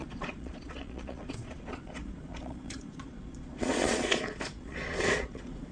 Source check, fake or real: fake